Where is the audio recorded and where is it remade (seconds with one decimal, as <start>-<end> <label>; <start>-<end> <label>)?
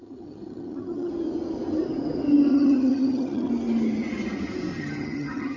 0.0-1.1 remade; 1.1-2.5 recorded; 2.5-3.5 remade; 3.5-4.7 recorded; 4.7-5.6 remade